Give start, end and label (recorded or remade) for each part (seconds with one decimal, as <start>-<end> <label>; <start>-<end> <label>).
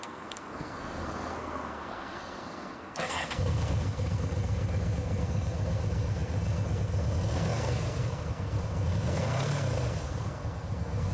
0.0-11.1 remade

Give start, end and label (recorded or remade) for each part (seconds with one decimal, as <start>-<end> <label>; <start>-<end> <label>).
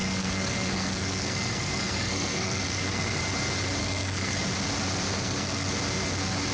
0.0-3.2 remade; 3.2-3.8 recorded; 3.8-4.4 remade; 4.4-5.1 recorded; 5.1-5.7 remade; 5.7-6.5 recorded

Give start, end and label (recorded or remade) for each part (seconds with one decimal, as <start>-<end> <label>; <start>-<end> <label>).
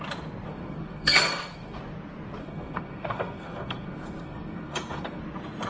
0.0-0.5 recorded; 0.5-1.8 remade; 1.8-2.4 recorded; 2.4-5.2 remade; 5.2-5.7 recorded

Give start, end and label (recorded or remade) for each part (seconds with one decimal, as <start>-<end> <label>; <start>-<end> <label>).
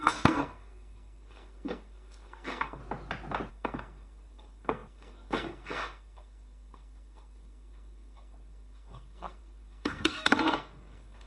0.0-2.8 remade; 2.8-3.5 recorded; 3.5-11.3 remade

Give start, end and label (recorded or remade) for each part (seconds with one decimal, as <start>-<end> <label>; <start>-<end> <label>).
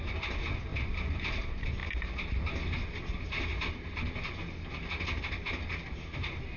0.0-6.6 recorded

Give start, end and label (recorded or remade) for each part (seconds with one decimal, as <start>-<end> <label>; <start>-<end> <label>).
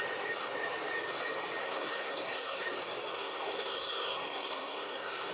0.0-1.6 recorded; 1.6-2.6 remade; 2.6-3.1 recorded; 3.1-5.3 remade